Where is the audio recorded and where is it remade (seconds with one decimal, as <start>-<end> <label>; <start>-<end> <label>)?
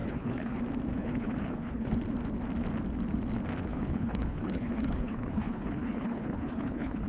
0.0-0.6 remade; 0.6-1.0 recorded; 1.0-1.9 remade; 1.9-3.7 recorded; 3.7-7.1 remade